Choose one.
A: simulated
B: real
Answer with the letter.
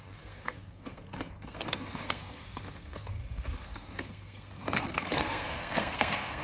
A